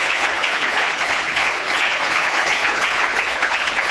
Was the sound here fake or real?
fake